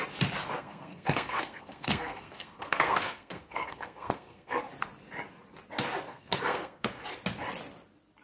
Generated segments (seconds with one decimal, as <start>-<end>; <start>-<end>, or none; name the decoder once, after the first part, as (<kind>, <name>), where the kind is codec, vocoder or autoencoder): 0.4-4.6 (codec, SNAC); 6.1-7.0